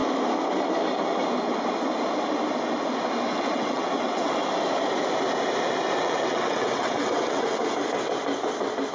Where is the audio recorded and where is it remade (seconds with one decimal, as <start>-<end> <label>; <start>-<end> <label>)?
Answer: 0.0-3.3 recorded; 3.3-4.4 remade; 4.4-6.0 recorded; 6.0-7.6 remade; 7.6-8.9 recorded

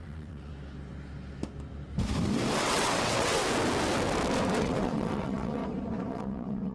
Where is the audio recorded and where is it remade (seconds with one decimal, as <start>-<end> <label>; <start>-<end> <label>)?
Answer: 0.0-0.5 remade; 0.5-2.6 recorded; 2.6-3.4 remade; 3.4-4.6 recorded; 4.6-5.6 remade; 5.6-6.1 recorded; 6.1-6.7 remade

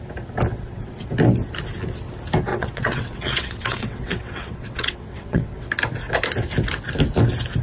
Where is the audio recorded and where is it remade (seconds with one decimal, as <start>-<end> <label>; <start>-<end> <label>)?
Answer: 0.0-0.5 recorded; 0.5-1.0 remade; 1.0-2.5 recorded; 2.5-5.7 remade; 5.7-7.6 recorded